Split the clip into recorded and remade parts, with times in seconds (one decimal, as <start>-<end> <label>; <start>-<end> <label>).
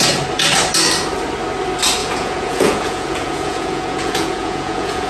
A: 0.0-2.0 recorded; 2.0-5.1 remade